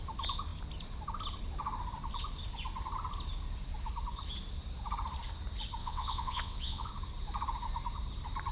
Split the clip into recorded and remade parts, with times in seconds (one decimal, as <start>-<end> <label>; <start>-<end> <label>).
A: 0.0-5.8 recorded; 5.8-6.9 remade; 6.9-8.5 recorded